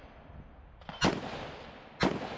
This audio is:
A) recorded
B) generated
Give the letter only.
A